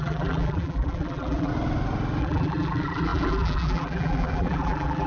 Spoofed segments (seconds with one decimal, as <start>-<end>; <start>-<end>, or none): 0.0-1.5; 2.2-5.1